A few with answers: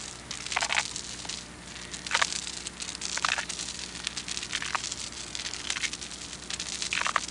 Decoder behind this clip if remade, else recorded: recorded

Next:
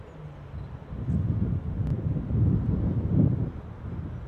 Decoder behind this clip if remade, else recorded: recorded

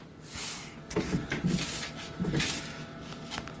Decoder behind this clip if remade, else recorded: recorded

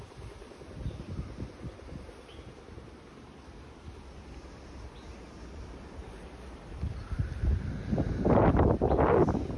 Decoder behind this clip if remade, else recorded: recorded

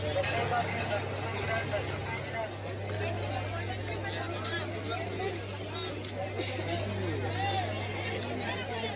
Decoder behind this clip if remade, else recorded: recorded